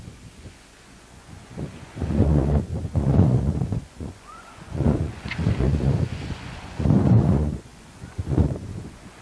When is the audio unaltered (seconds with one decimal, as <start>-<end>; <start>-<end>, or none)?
none